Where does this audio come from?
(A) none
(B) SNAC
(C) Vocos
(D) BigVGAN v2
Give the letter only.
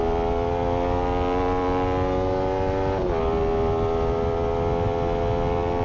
A